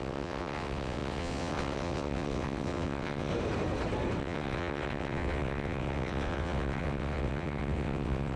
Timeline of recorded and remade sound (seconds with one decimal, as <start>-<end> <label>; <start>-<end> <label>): 0.0-3.3 remade; 3.3-4.2 recorded; 4.2-8.4 remade

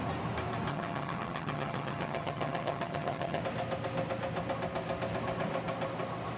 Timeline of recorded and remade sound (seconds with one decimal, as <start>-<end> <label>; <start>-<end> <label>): 0.0-0.7 recorded; 0.7-3.4 remade; 3.4-6.4 recorded

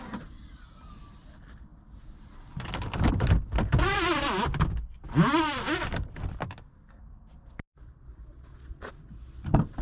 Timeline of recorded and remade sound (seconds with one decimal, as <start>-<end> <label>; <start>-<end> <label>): 0.0-7.8 recorded; 7.8-8.9 remade; 8.9-9.8 recorded

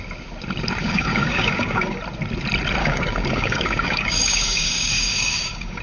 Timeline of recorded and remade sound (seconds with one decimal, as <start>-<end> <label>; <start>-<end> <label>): 0.0-0.8 recorded; 0.8-2.0 remade; 2.0-2.8 recorded; 2.8-5.8 remade

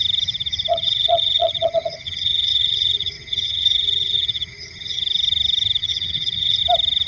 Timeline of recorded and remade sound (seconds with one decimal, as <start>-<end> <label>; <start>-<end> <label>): 0.0-0.7 recorded; 0.7-5.0 remade; 5.0-5.8 recorded; 5.8-6.6 remade; 6.6-7.1 recorded